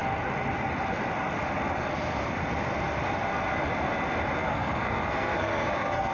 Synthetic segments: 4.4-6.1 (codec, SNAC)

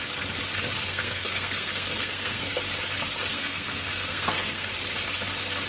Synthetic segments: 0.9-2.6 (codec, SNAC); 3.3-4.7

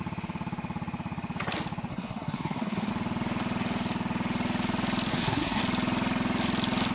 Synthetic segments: 1.9-2.9 (codec, SNAC); 5.1-5.6

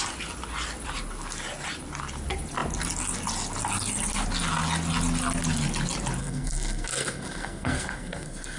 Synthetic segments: 6.2-8.6 (codec, SNAC)

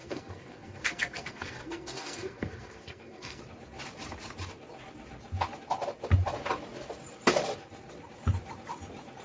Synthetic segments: 0.0-3.4 (codec, SNAC)